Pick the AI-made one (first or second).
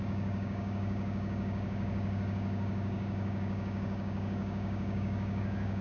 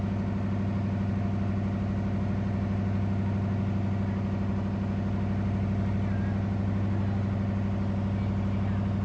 first